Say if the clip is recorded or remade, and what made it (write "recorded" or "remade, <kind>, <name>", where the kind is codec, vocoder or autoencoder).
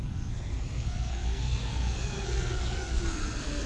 remade, codec, SNAC